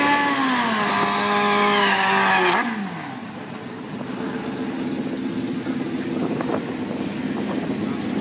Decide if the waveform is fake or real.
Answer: real